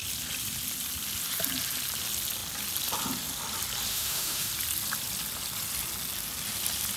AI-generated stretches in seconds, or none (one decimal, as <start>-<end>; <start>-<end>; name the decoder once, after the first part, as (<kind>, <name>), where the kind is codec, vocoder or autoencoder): 3.9-4.5 (autoencoder, DAC-VAE)